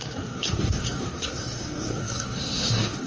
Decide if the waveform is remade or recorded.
remade